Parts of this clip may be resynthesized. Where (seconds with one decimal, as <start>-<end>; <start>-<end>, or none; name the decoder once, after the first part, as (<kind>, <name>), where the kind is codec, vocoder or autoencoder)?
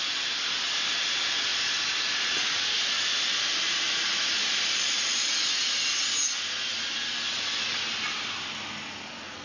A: 4.4-5.3 (vocoder, BigVGAN v2)